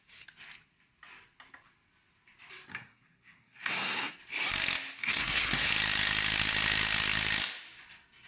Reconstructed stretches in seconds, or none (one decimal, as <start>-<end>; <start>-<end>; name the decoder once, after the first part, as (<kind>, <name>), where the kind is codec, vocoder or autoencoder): 2.7-4.1 (codec, SNAC); 5.0-5.7